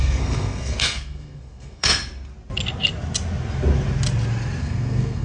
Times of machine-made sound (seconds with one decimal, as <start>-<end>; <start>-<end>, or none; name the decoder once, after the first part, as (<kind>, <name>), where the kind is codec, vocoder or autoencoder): 0.0-1.9 (codec, SNAC); 4.6-5.2